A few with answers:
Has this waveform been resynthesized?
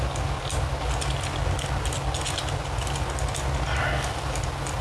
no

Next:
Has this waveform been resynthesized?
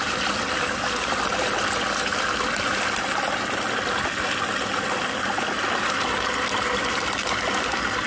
no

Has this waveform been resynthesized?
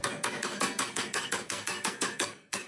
yes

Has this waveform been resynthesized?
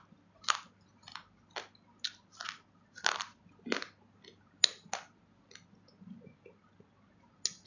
no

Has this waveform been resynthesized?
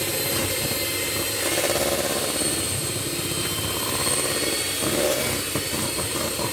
yes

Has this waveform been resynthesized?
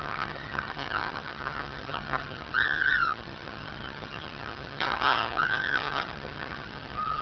yes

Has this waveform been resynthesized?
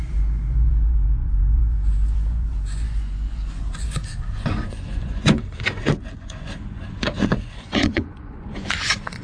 yes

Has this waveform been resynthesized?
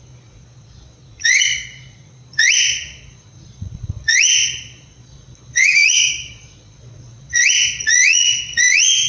yes